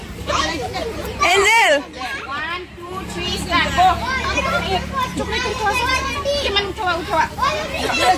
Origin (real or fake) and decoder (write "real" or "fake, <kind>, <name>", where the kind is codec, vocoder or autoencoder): fake, vocoder, BigVGAN v2